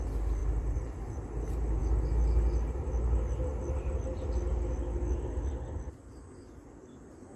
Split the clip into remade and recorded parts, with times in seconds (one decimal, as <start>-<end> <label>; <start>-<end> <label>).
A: 0.0-0.4 recorded; 0.4-1.4 remade; 1.4-7.4 recorded